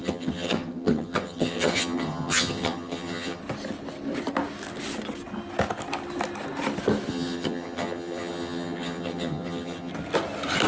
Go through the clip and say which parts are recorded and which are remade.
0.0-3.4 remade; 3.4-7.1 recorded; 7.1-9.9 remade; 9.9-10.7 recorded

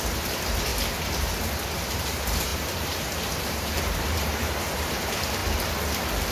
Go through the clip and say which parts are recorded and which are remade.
0.0-0.7 remade; 0.7-1.9 recorded; 1.9-5.4 remade; 5.4-6.3 recorded

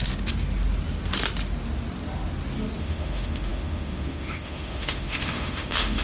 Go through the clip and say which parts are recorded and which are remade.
0.0-2.8 recorded; 2.8-6.0 remade

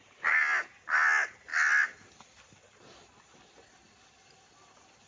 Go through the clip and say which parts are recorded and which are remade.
0.0-5.1 recorded

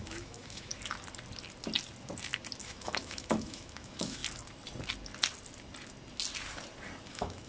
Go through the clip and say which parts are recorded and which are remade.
0.0-0.7 remade; 0.7-2.6 recorded; 2.6-4.2 remade; 4.2-7.1 recorded; 7.1-7.5 remade

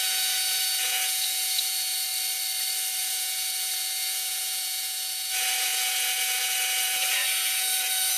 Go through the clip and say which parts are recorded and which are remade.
0.0-2.1 remade; 2.1-3.0 recorded; 3.0-8.2 remade